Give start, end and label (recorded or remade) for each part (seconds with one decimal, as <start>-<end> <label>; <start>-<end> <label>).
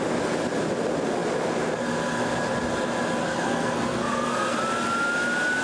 0.0-3.2 recorded; 3.2-4.6 remade; 4.6-5.6 recorded